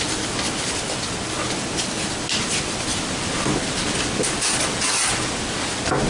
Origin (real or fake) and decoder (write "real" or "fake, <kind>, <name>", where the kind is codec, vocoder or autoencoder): real